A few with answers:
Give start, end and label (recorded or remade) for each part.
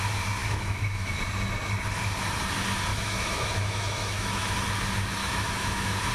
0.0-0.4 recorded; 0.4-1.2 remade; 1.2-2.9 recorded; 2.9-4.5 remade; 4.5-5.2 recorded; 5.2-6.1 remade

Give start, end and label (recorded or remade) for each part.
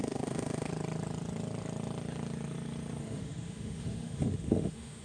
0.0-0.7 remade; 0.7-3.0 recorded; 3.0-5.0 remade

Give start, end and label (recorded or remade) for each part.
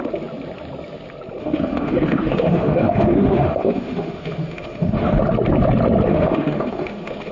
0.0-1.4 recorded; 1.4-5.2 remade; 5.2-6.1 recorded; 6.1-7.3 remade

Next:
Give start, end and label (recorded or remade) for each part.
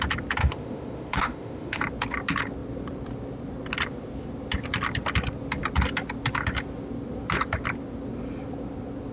0.0-0.4 recorded; 0.4-1.8 remade; 1.8-9.1 recorded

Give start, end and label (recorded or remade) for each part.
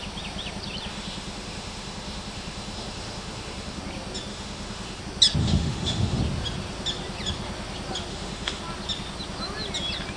0.0-0.9 recorded; 0.9-3.8 remade; 3.8-4.3 recorded; 4.3-5.0 remade; 5.0-5.4 recorded; 5.4-6.2 remade; 6.2-8.1 recorded; 8.1-8.6 remade; 8.6-10.2 recorded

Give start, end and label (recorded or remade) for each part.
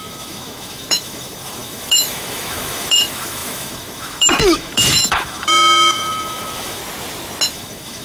0.0-6.8 remade; 6.8-7.5 recorded; 7.5-8.0 remade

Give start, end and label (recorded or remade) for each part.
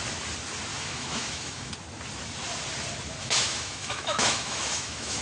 0.0-0.7 recorded; 0.7-1.7 remade; 1.7-3.2 recorded; 3.2-5.2 remade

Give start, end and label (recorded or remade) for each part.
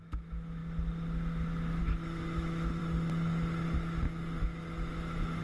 0.0-0.6 remade; 0.6-1.8 recorded; 1.8-2.8 remade; 2.8-4.4 recorded; 4.4-5.4 remade